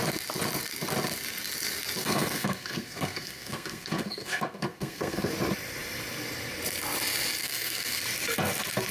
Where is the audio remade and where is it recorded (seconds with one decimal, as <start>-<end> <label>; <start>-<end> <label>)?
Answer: 0.0-2.0 recorded; 2.0-5.3 remade; 5.3-7.4 recorded; 7.4-8.0 remade; 8.0-8.9 recorded